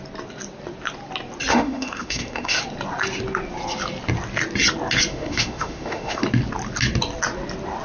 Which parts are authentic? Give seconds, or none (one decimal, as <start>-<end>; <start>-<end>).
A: 0.0-1.5; 2.6-5.1; 6.2-7.8